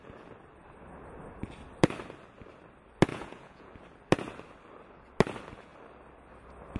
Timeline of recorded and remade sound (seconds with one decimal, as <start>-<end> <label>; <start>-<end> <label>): 0.0-3.1 recorded; 3.1-3.7 remade; 3.7-6.8 recorded